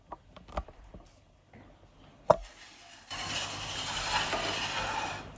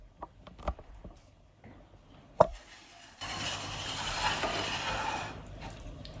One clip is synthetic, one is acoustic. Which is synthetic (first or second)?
second